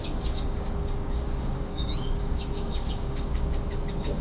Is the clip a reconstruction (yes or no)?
yes